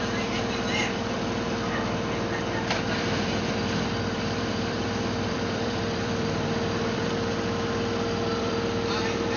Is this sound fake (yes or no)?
yes